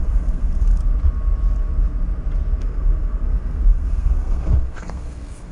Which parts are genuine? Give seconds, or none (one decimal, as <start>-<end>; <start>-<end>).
0.8-2.6